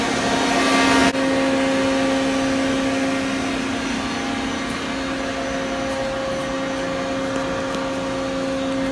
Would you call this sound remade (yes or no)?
no